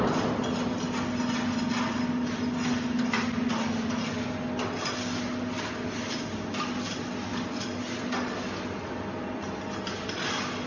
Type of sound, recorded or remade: recorded